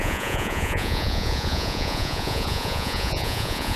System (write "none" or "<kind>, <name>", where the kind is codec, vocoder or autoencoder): vocoder, Vocos